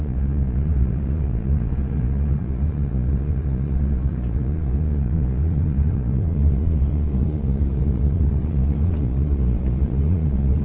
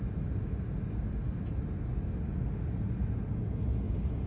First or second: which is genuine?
second